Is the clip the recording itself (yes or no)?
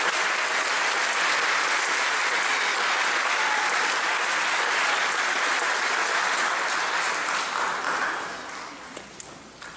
yes